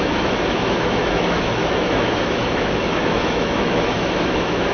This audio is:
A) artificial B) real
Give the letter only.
A